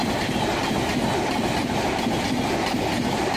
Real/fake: real